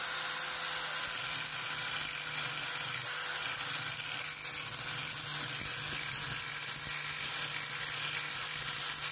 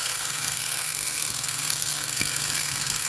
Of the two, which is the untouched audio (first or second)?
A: first